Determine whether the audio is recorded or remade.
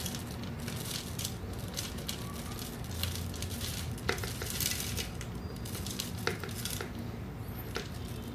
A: recorded